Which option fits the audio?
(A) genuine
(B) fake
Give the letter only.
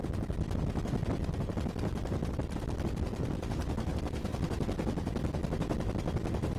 A